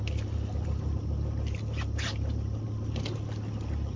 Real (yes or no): yes